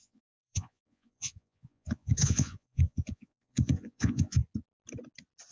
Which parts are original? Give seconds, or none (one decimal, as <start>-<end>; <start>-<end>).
4.4-5.5